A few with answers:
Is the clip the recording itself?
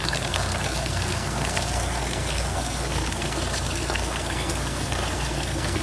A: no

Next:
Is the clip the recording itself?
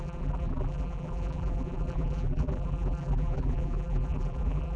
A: no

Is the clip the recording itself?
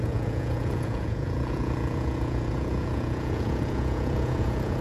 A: no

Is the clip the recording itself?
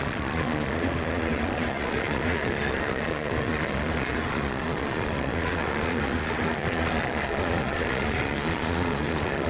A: no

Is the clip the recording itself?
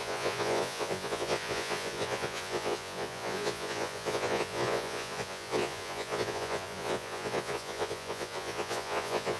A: no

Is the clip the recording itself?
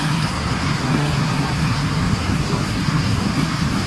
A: no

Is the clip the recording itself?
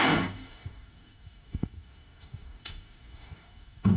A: no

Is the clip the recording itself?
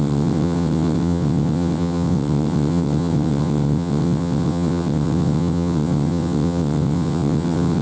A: no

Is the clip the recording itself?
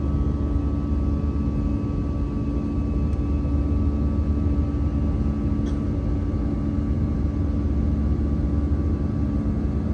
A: yes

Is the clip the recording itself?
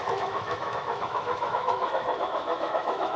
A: no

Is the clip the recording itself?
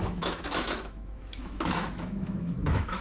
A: no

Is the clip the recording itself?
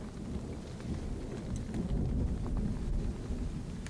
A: yes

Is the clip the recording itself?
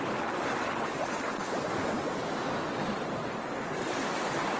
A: yes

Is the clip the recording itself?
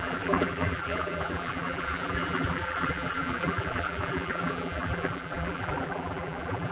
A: no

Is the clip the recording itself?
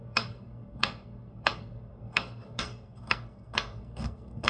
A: no